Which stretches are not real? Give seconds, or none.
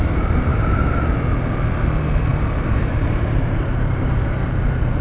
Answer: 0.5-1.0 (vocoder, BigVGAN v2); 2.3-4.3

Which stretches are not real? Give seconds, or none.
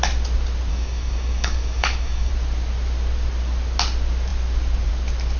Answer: 0.7-2.3 (codec, DAC)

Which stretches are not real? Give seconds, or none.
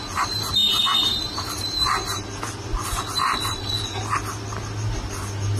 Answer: none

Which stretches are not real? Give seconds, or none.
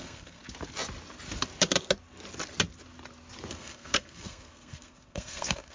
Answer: 0.0-0.4 (codec, SNAC); 3.5-5.7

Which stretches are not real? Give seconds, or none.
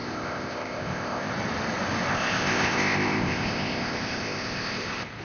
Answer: 0.0-1.3 (codec, ZipCodec); 2.1-5.2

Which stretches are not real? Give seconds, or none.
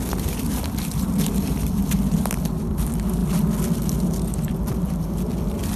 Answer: 0.0-3.2 (vocoder, BigVGAN v2); 4.5-5.8